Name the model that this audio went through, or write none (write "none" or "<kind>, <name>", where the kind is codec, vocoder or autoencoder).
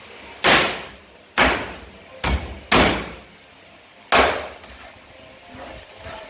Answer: none